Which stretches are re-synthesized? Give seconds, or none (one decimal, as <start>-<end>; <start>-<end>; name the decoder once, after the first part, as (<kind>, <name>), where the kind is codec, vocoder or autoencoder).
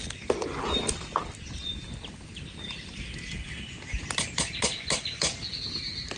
1.2-1.8 (vocoder, BigVGAN v2)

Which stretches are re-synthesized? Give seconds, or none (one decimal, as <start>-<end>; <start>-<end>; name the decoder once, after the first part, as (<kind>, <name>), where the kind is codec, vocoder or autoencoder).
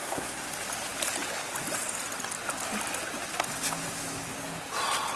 0.0-0.5 (codec, SNAC)